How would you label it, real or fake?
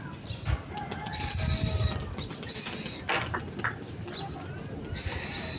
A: real